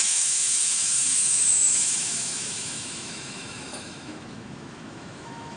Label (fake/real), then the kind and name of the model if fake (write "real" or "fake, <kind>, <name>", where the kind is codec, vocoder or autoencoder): fake, autoencoder, DAC-VAE